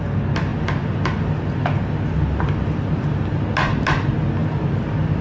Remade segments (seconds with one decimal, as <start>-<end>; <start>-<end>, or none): none